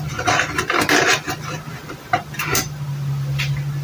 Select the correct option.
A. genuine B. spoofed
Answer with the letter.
A